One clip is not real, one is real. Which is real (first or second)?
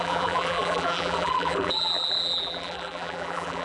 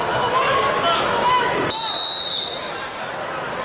second